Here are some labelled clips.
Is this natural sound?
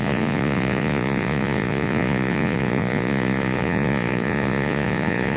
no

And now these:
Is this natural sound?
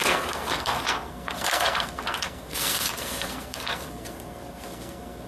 no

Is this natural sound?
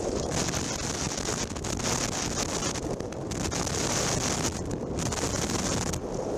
yes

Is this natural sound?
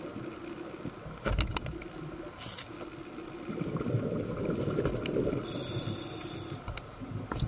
yes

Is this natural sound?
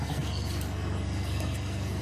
no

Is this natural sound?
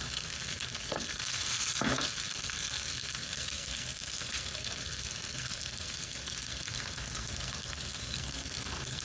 no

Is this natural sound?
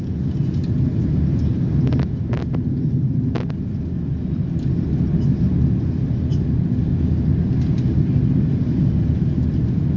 yes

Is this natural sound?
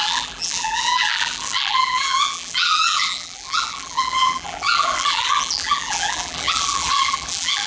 no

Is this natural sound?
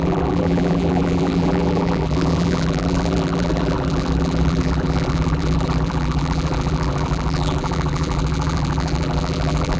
no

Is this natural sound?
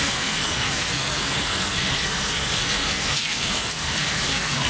no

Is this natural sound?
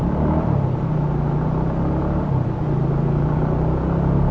yes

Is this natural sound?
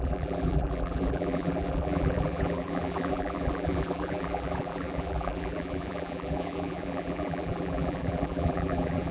no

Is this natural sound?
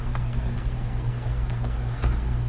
no